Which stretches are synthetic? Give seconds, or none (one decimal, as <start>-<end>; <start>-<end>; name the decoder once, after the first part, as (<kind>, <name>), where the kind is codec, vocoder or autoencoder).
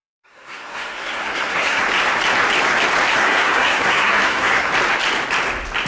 0.0-1.8 (codec, SNAC); 3.1-4.7